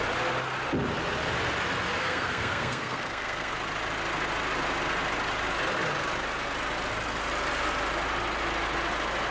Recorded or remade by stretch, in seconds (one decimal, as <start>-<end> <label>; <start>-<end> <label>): 0.0-2.0 recorded; 2.0-3.5 remade; 3.5-9.3 recorded